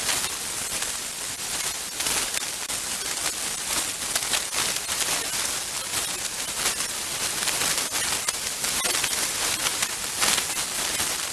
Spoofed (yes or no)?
no